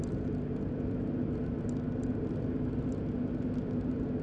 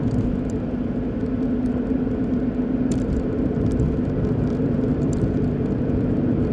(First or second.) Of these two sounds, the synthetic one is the second